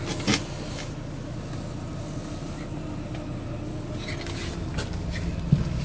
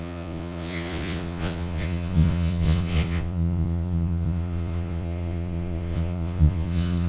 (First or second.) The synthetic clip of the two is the second